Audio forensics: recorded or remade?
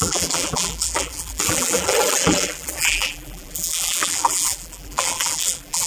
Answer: remade